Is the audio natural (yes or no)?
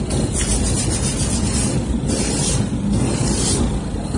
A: yes